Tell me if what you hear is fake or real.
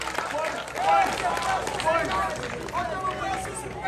real